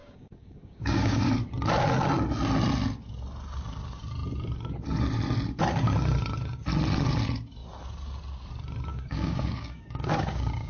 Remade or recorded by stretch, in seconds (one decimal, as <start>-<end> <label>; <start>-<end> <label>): 0.0-1.3 remade; 1.3-8.9 recorded; 8.9-10.7 remade